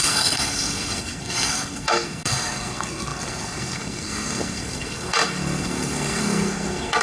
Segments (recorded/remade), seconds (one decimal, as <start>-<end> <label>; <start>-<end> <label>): 0.0-7.0 remade